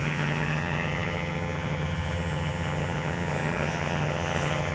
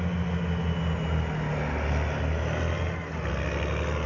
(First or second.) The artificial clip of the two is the first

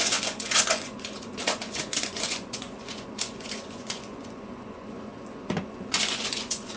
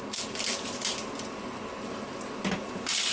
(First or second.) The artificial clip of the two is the first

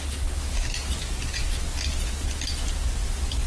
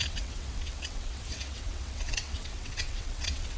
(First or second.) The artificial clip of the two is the second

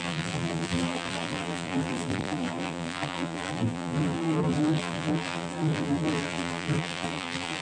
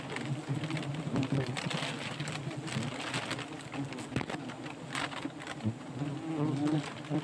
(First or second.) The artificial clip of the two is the first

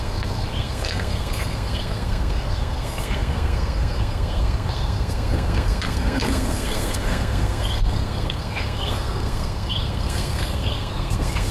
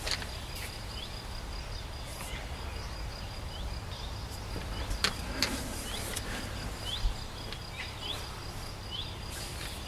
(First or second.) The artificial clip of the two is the first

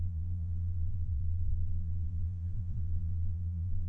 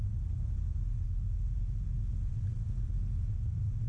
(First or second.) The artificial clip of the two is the first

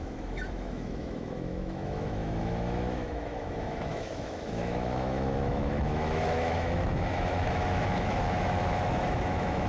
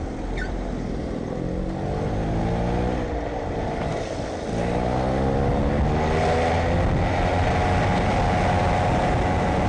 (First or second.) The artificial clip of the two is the first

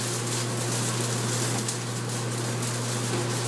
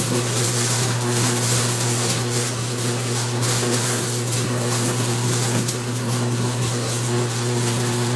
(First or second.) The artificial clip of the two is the second